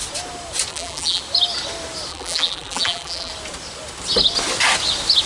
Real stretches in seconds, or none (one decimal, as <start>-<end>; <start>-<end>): 0.0-0.7; 1.2-2.1; 3.3-5.3